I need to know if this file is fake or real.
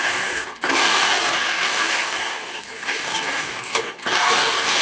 fake